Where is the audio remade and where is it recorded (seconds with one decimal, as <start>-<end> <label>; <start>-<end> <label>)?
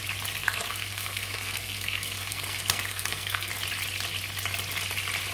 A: 0.0-0.4 recorded; 0.4-3.5 remade; 3.5-5.3 recorded